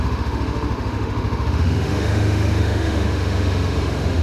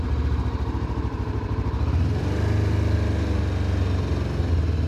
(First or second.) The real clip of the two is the second